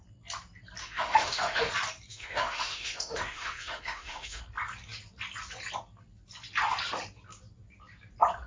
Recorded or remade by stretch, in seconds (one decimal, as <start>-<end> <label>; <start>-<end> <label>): 0.0-0.8 recorded; 0.8-1.7 remade; 1.7-2.1 recorded; 2.1-4.4 remade; 4.4-8.5 recorded